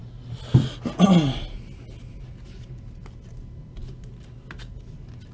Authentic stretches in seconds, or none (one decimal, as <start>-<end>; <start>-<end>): 0.0-5.3